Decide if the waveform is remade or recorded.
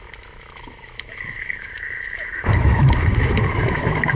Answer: remade